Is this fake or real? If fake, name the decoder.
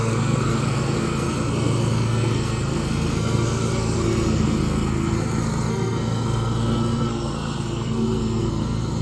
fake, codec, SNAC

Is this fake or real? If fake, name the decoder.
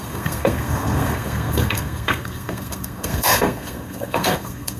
fake, codec, SNAC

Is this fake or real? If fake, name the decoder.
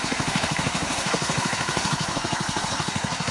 fake, codec, SNAC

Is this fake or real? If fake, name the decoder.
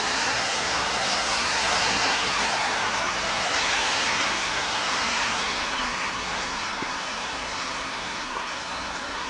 fake, codec, SNAC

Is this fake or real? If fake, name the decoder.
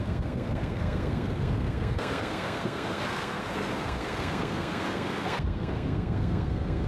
fake, codec, SNAC